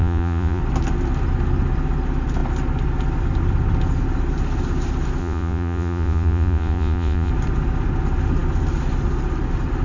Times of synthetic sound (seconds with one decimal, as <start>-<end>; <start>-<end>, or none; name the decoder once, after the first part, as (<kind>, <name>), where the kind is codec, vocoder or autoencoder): 0.0-0.6 (vocoder, Vocos); 5.2-7.3